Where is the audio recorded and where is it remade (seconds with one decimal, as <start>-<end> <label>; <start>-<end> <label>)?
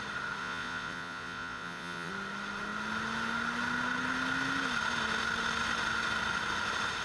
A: 0.0-0.4 recorded; 0.4-2.1 remade; 2.1-7.0 recorded